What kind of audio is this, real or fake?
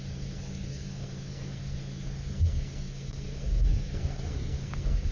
fake